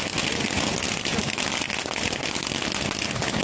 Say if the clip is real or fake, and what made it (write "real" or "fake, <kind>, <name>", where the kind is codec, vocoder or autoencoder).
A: real